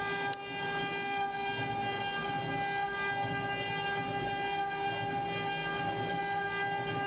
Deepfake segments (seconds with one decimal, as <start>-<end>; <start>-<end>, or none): none